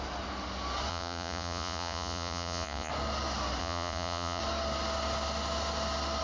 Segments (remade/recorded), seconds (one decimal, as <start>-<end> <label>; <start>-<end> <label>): 0.0-0.9 recorded; 0.9-2.9 remade; 2.9-3.6 recorded; 3.6-4.4 remade; 4.4-6.2 recorded